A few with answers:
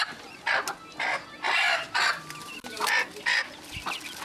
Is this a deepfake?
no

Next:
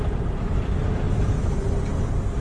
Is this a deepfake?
no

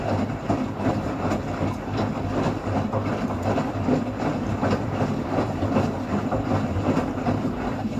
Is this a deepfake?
no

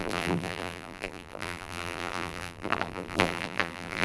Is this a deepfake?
yes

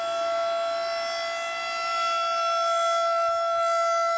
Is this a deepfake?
no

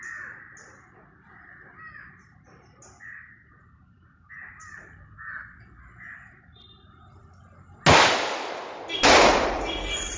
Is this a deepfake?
no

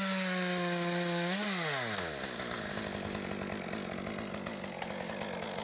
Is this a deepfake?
no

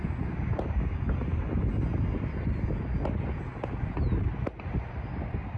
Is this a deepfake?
no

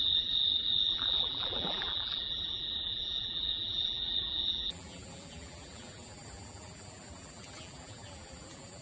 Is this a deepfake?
yes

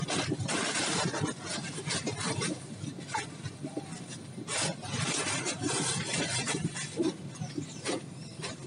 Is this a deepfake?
no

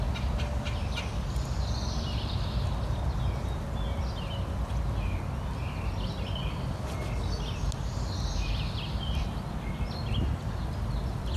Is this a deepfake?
no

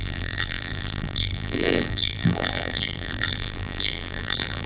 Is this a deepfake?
yes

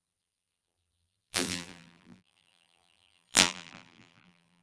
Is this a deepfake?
yes